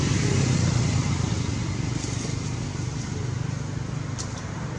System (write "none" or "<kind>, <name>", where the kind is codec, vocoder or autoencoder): none